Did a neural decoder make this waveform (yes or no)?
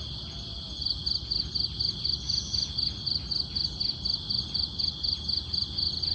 no